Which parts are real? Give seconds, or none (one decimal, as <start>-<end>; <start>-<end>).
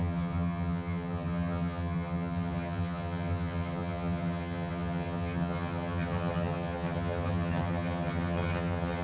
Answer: none